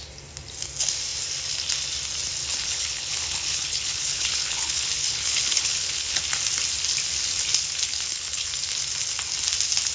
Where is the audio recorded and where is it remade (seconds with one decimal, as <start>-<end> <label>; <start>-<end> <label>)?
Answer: 0.0-2.4 recorded; 2.4-6.2 remade; 6.2-7.9 recorded; 7.9-8.5 remade; 8.5-9.9 recorded